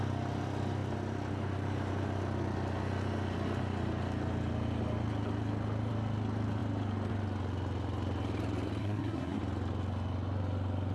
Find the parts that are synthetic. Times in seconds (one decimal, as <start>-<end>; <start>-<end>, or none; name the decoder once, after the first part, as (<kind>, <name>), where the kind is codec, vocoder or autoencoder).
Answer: 8.8-9.4 (codec, SNAC)